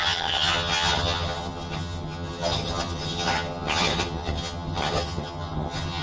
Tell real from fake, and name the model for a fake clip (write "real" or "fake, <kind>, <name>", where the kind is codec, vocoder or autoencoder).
fake, vocoder, HiFi-GAN